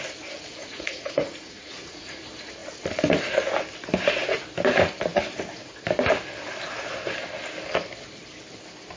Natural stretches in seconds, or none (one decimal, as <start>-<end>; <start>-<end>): 0.0-0.6; 2.2-9.0